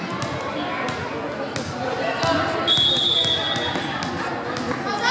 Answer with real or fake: real